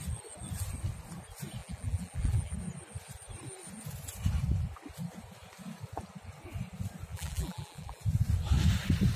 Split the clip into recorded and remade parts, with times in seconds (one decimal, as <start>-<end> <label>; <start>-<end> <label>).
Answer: 0.0-1.6 recorded; 1.6-2.5 remade; 2.5-7.1 recorded; 7.1-8.0 remade; 8.0-9.2 recorded